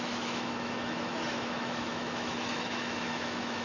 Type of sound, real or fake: fake